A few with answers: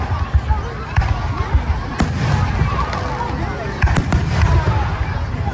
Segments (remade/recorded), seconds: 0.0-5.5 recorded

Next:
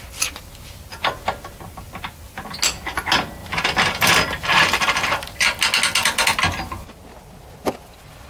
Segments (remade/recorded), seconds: 0.0-3.4 recorded; 3.4-5.6 remade; 5.6-8.3 recorded

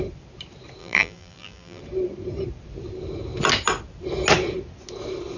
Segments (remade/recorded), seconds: 0.0-0.8 recorded; 0.8-1.8 remade; 1.8-5.4 recorded

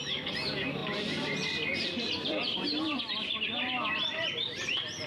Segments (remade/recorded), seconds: 0.0-5.1 remade